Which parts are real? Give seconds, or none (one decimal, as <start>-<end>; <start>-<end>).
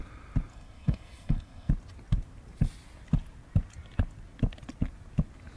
0.0-0.5; 1.7-5.6